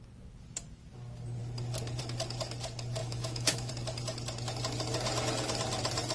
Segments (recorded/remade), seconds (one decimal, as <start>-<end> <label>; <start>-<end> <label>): 0.0-3.0 recorded; 3.0-3.7 remade; 3.7-6.1 recorded